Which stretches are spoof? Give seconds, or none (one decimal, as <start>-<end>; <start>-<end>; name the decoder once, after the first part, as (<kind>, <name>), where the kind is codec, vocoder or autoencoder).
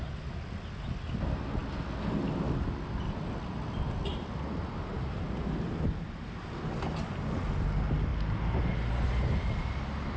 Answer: 4.1-5.9 (vocoder, BigVGAN v2)